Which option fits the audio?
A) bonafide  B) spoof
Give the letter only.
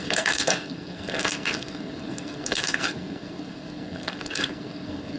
B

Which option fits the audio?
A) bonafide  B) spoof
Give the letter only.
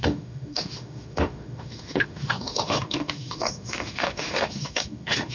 B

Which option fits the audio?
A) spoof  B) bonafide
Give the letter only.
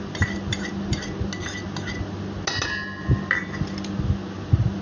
B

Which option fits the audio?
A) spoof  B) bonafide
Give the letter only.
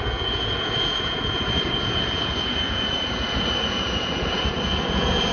A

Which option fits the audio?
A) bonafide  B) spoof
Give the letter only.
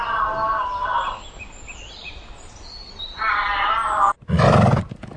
A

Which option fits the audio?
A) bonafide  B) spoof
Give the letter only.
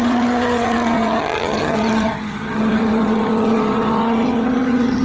B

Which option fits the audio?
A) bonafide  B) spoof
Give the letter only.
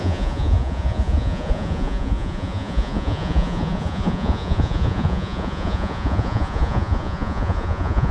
B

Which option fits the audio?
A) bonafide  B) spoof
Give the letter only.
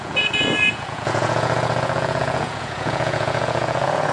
B